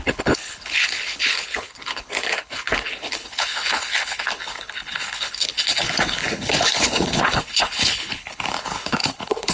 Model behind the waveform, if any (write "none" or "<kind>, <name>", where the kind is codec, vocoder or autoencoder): codec, HILCodec